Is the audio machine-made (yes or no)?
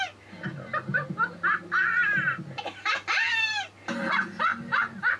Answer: no